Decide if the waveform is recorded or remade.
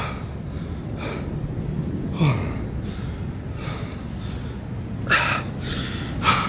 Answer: recorded